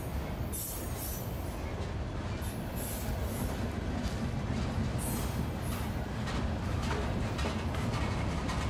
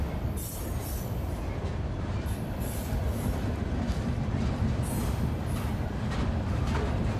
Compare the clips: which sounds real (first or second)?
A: first